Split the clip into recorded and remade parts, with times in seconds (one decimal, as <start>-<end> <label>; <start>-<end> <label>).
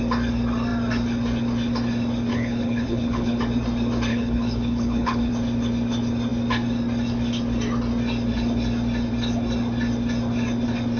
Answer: 0.0-2.3 recorded; 2.3-3.4 remade; 3.4-4.1 recorded; 4.1-5.3 remade; 5.3-11.0 recorded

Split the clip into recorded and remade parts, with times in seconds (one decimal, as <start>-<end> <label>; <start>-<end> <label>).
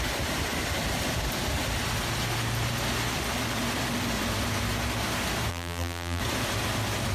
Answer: 0.0-5.5 recorded; 5.5-6.2 remade; 6.2-7.1 recorded